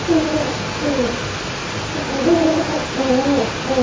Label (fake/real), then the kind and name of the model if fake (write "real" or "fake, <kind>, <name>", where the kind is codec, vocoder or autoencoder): real